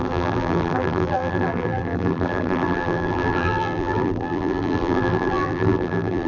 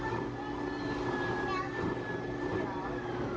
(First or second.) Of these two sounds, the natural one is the second